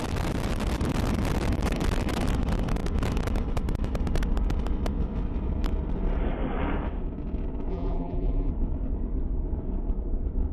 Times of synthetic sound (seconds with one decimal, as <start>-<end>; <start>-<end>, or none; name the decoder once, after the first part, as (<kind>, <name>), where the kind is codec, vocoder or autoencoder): 7.7-8.5 (vocoder, BigVGAN v2)